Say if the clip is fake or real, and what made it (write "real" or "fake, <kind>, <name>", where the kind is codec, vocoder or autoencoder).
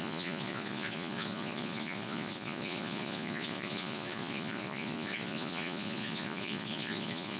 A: fake, vocoder, Vocos